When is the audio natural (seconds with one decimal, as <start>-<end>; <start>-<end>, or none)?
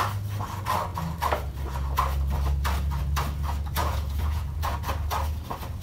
0.0-3.8; 4.7-5.8